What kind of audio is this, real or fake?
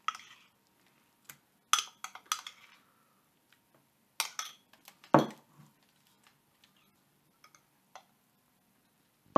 real